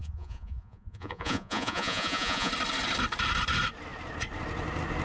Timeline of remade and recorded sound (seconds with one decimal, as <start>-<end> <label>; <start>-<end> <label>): 0.0-2.5 remade; 2.5-5.0 recorded